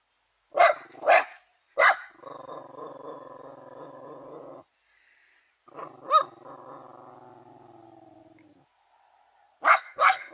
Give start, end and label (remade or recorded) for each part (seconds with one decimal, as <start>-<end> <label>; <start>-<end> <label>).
0.0-9.7 recorded; 9.7-10.3 remade